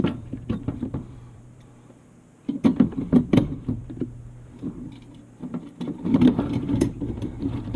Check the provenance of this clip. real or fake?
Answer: fake